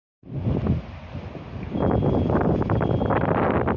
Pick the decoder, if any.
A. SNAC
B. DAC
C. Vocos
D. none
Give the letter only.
D